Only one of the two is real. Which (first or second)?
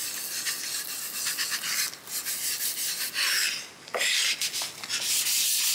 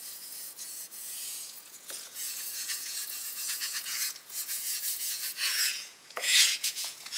first